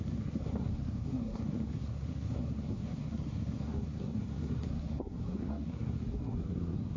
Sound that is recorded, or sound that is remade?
remade